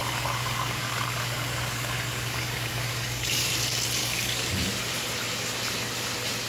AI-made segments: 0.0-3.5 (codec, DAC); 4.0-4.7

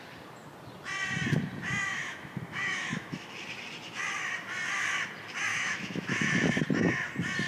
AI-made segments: 1.9-3.3 (autoencoder, DAC-VAE); 5.5-6.6

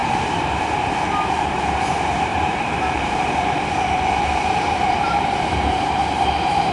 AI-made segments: 0.0-6.7 (vocoder, BigVGAN v2)

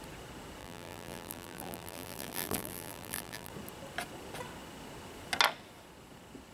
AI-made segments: 0.6-3.5 (vocoder, BigVGAN v2)

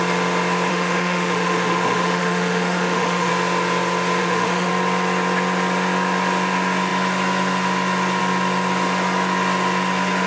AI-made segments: 0.7-3.3 (autoencoder, DAC-VAE); 4.2-4.7

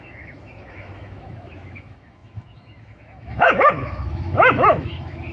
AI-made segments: 0.0-5.3 (autoencoder, DAC-VAE)

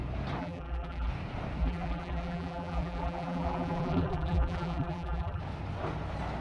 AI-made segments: 0.4-1.1 (vocoder, BigVGAN v2); 1.6-5.4

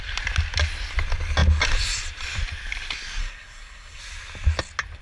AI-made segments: 3.2-4.0 (codec, SNAC)